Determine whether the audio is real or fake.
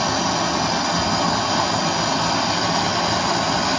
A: real